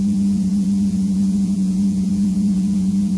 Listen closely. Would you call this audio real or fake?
fake